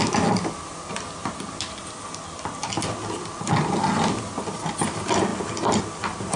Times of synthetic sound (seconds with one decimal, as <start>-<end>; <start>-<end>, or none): none

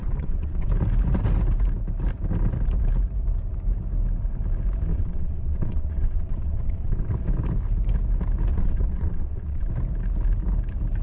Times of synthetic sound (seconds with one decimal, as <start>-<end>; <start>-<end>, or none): 0.0-0.7; 4.9-7.1; 8.5-9.7

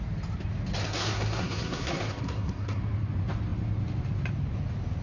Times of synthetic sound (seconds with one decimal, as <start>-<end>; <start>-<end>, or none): 0.8-2.8

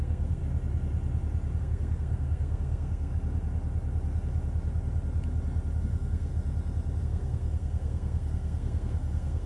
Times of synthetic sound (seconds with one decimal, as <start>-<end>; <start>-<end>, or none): 0.0-0.4; 1.6-3.1; 5.8-6.3; 7.0-9.5

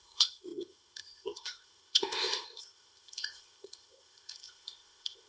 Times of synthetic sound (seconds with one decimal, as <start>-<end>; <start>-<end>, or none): 0.0-5.3

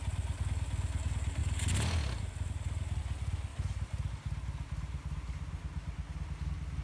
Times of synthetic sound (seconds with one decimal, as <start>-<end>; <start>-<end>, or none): none

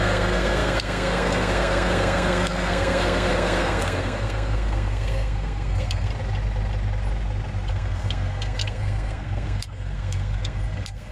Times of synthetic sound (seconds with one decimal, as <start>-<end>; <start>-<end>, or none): 0.0-6.1; 7.7-11.1